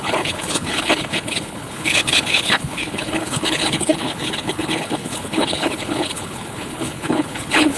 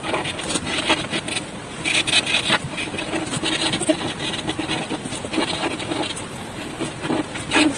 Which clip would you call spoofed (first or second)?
first